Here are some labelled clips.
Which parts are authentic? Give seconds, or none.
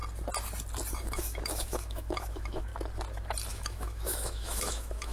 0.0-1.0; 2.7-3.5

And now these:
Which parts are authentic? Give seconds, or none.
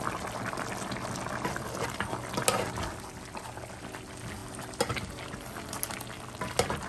0.0-6.9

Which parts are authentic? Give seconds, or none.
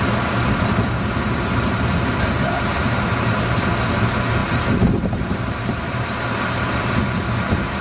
0.0-4.4; 6.9-7.8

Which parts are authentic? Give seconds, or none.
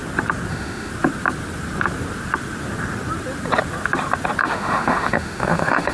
0.0-0.5; 0.9-4.4